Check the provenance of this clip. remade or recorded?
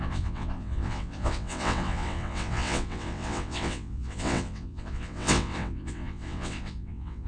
remade